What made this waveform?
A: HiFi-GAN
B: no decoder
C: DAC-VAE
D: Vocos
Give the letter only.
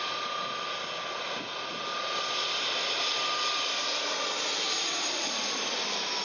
B